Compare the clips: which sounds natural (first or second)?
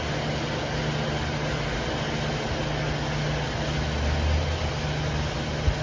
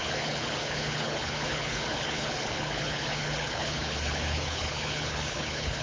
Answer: first